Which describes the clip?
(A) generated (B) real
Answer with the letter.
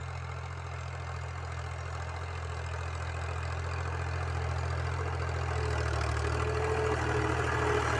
B